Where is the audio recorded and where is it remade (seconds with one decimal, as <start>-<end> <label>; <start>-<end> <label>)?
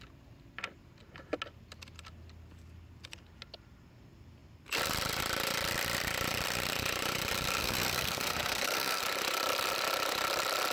0.0-7.6 recorded; 7.6-9.0 remade; 9.0-10.7 recorded